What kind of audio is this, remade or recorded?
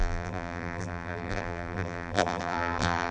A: remade